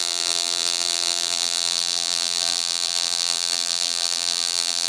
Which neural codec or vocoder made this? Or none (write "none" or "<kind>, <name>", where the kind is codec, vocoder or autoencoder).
vocoder, BigVGAN v2